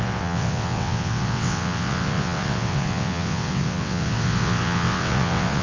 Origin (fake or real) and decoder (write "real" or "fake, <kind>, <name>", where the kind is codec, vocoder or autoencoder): fake, vocoder, WaveNeXt